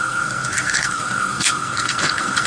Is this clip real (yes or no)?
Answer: no